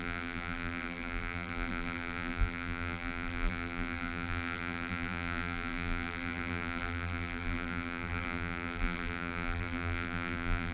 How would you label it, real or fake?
fake